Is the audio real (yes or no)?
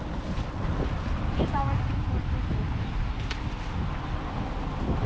yes